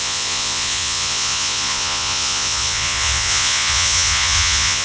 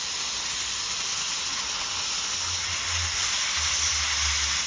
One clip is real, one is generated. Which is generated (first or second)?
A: first